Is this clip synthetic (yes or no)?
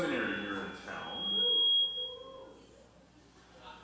no